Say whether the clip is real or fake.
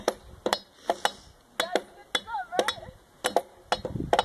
real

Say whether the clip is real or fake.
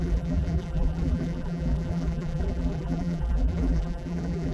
fake